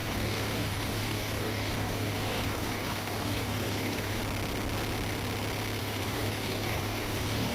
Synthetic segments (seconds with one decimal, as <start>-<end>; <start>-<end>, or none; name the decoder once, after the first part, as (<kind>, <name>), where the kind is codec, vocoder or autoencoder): 0.0-4.2 (codec, DAC); 5.8-7.5